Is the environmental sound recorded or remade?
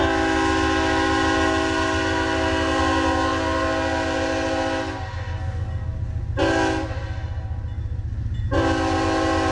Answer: recorded